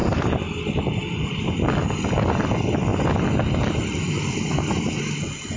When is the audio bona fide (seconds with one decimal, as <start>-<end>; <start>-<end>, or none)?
0.0-5.6